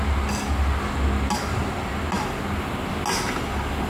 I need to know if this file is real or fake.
real